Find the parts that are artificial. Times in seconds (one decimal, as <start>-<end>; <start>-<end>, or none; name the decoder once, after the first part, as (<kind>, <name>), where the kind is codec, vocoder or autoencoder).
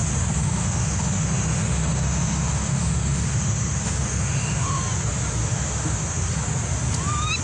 0.4-4.8 (autoencoder, DAC-VAE); 5.4-6.3